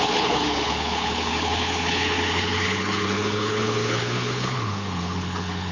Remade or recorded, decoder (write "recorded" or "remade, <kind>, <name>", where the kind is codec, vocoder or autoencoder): remade, codec, HILCodec